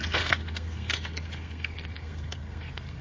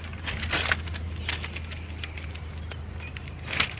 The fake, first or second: first